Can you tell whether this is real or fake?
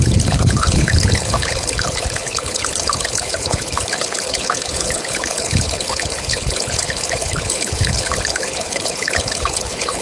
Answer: fake